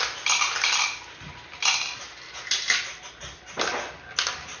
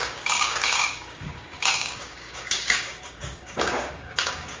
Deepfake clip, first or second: second